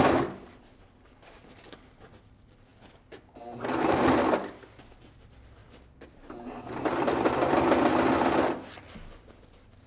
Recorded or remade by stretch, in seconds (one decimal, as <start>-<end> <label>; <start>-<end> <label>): 0.0-9.9 recorded